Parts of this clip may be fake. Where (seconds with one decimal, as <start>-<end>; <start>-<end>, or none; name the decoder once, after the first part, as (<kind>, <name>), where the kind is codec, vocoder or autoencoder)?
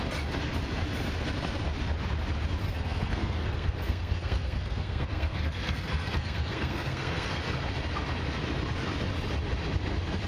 2.6-7.4 (codec, SNAC)